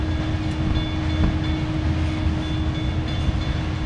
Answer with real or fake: real